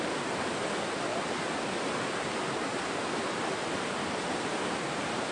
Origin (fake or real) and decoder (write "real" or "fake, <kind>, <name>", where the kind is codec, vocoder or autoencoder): real